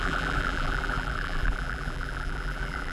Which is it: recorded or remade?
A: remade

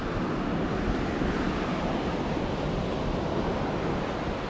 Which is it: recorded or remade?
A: recorded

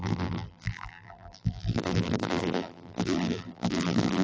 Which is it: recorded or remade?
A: remade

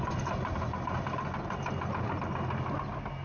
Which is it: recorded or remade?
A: recorded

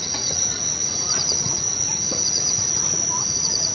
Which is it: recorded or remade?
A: remade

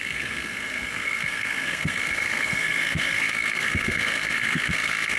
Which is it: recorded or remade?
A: remade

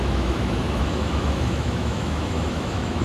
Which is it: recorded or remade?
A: remade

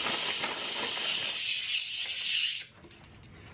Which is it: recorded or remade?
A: recorded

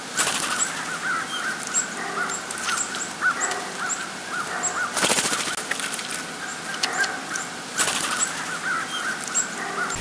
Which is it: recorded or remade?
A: recorded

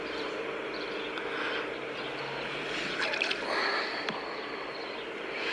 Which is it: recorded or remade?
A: recorded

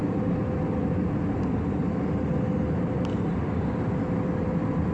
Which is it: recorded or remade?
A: recorded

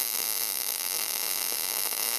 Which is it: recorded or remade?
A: remade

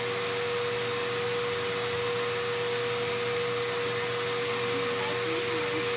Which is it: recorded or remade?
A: recorded